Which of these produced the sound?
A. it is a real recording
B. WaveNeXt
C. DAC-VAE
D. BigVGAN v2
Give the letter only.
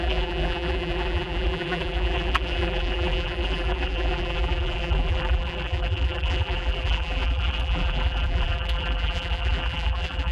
D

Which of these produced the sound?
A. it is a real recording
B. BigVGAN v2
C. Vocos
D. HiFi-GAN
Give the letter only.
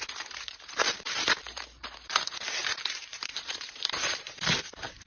B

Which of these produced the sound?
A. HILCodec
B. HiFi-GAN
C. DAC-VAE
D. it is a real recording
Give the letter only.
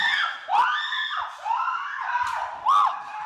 D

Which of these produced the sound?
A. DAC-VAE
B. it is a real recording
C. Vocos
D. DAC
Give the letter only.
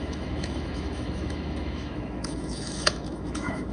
A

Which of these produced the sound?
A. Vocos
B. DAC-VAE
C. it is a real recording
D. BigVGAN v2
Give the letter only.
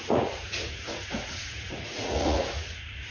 A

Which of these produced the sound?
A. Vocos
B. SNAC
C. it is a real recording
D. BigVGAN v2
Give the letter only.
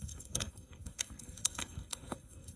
B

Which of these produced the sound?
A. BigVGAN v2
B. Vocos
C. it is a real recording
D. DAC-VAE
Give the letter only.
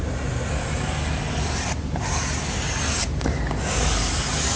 C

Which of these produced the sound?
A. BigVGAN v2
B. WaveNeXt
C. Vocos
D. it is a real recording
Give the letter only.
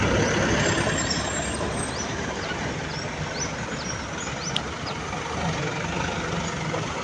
D